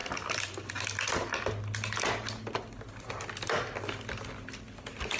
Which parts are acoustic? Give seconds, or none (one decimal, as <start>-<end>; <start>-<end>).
0.0-5.2